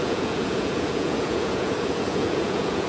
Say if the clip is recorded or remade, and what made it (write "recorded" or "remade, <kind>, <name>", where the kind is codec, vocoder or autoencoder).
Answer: remade, vocoder, Vocos